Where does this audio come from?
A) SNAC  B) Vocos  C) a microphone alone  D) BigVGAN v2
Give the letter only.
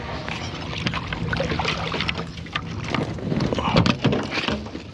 C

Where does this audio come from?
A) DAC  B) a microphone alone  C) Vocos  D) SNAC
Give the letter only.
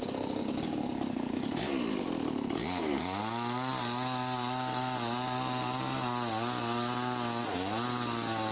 B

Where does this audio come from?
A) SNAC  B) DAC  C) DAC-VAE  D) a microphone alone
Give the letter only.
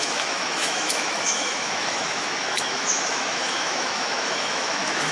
C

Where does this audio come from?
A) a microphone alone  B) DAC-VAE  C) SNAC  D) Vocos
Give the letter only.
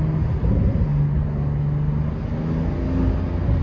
A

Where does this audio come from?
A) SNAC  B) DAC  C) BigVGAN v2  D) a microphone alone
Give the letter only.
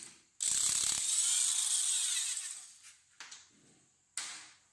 D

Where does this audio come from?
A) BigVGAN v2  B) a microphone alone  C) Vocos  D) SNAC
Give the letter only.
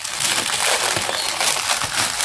B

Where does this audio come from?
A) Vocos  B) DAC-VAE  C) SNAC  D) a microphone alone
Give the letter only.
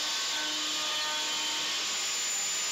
D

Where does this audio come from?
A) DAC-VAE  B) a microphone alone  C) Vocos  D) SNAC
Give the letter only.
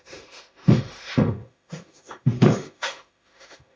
A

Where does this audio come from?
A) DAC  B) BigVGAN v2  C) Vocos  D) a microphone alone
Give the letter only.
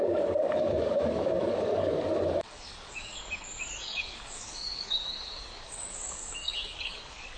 A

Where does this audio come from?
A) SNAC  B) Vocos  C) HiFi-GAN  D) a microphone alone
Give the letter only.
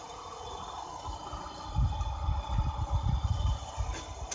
D